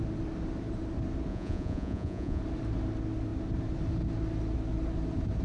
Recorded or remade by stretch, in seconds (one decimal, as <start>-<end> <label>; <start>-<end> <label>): 0.0-1.3 recorded; 1.3-2.4 remade; 2.4-5.4 recorded